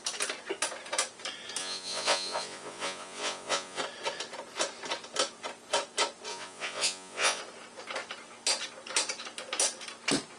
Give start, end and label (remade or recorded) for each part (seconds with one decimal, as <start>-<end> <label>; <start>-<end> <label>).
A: 0.0-1.6 recorded; 1.6-3.8 remade; 3.8-6.3 recorded; 6.3-7.4 remade; 7.4-10.4 recorded